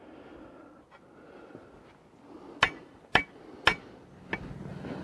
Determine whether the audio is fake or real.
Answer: real